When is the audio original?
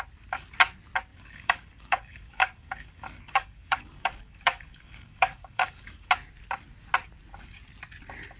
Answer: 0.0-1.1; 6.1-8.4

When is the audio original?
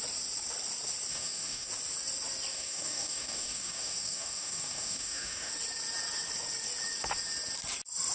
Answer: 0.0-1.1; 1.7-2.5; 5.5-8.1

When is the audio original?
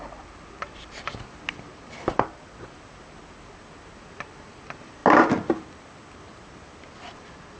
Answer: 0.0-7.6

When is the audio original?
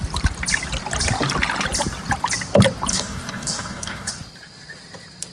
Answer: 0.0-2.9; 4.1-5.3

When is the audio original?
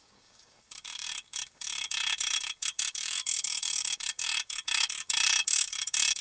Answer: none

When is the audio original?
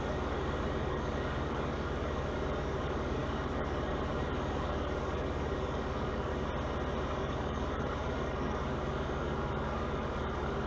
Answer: 6.3-7.1